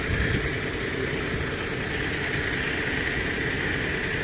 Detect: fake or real real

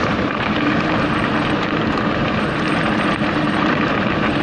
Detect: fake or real fake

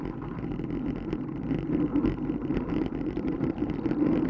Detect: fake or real fake